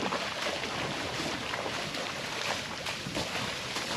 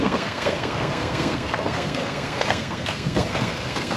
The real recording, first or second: first